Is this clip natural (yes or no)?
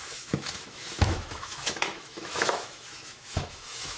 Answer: no